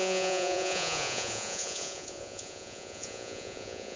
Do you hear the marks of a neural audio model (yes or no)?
yes